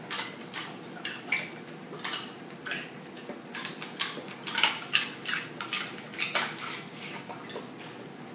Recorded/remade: recorded